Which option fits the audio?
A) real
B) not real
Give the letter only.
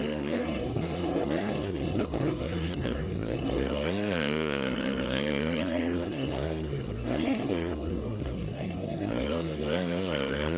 B